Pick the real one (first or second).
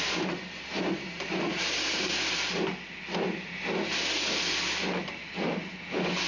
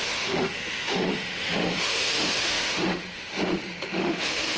first